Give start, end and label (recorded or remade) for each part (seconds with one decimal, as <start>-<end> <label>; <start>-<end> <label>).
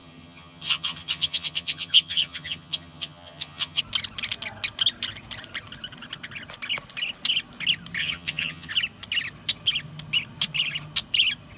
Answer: 0.0-3.8 remade; 3.8-8.0 recorded; 8.0-8.7 remade; 8.7-11.6 recorded